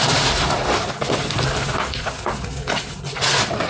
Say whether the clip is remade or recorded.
recorded